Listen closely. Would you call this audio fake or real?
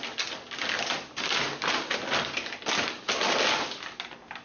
real